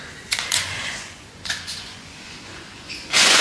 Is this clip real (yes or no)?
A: no